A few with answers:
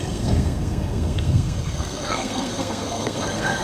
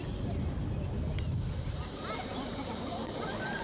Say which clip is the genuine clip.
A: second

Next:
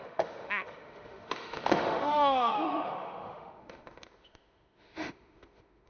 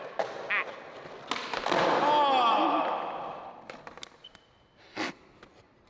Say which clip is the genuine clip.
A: second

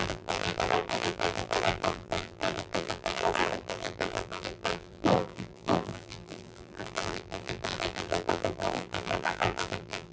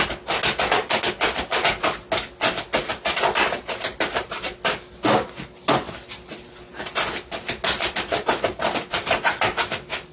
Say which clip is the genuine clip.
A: second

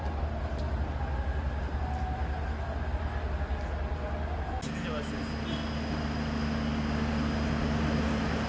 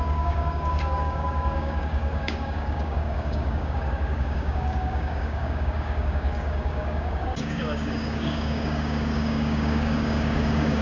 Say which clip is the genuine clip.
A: first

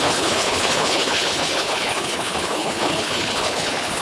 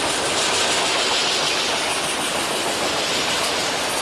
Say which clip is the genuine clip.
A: second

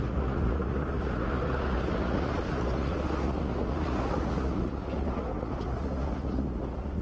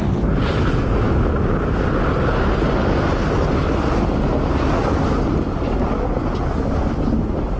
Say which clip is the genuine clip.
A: second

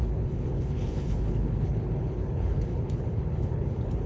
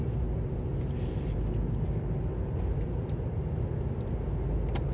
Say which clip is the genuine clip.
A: second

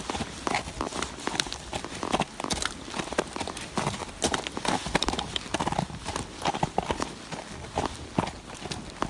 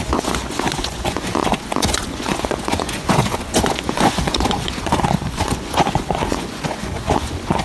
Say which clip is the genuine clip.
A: first